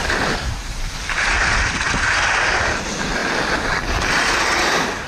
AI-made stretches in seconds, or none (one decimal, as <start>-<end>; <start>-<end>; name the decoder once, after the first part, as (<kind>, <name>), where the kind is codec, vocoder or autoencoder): none